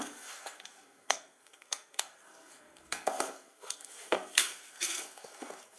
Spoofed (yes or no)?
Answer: yes